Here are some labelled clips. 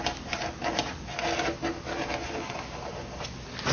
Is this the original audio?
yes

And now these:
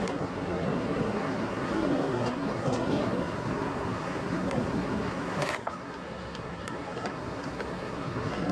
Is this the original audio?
no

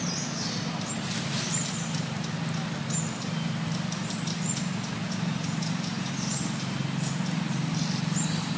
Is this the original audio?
yes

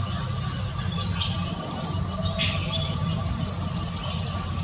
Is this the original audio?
yes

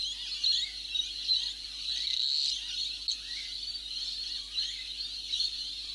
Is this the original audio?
yes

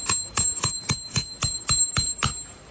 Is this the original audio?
yes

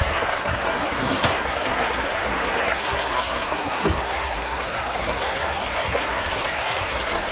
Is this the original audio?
no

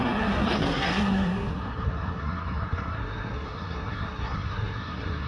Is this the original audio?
no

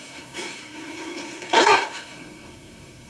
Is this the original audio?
no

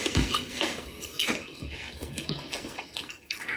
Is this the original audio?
no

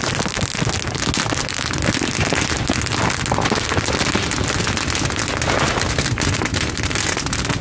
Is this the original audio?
yes